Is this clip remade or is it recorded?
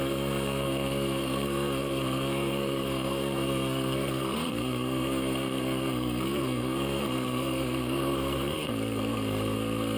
remade